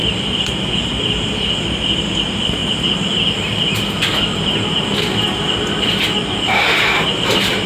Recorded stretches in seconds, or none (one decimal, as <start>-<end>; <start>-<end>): 2.6-6.2